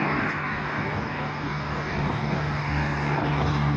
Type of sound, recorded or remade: remade